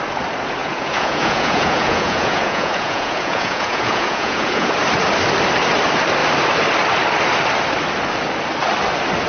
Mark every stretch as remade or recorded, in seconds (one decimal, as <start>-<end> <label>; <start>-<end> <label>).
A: 0.0-0.6 recorded; 0.6-4.7 remade; 4.7-9.3 recorded